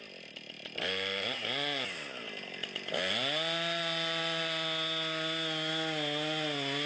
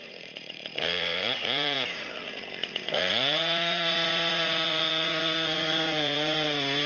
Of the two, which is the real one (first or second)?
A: first